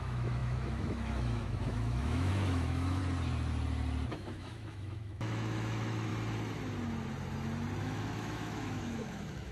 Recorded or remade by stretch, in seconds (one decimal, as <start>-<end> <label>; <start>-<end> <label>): 0.0-3.0 remade; 3.0-4.1 recorded; 4.1-6.1 remade; 6.1-7.8 recorded; 7.8-9.5 remade